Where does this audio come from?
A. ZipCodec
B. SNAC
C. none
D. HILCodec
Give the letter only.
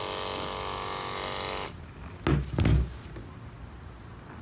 C